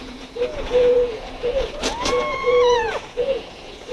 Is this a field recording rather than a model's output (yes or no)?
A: no